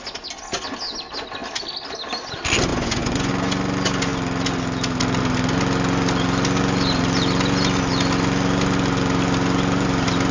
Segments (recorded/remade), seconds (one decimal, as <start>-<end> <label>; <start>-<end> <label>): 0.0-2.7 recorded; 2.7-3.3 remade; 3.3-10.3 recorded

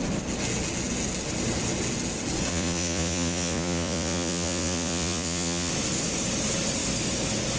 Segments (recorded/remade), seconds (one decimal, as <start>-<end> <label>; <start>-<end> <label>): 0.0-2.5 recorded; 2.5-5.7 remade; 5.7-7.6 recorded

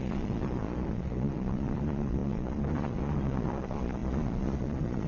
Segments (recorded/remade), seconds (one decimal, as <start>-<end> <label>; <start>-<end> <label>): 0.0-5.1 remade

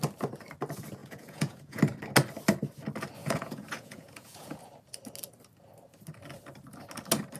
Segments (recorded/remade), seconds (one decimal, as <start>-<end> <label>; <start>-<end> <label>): 0.0-1.0 recorded; 1.0-1.8 remade; 1.8-3.2 recorded; 3.2-4.6 remade; 4.6-7.4 recorded

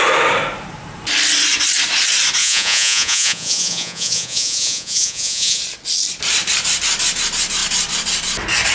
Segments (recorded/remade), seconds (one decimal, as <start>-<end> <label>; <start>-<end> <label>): 0.0-2.4 recorded; 2.4-5.6 remade; 5.6-8.7 recorded